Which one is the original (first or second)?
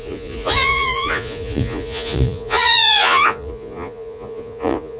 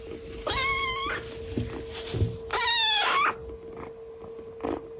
second